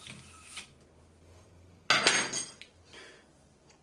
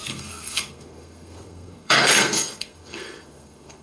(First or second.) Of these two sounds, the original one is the first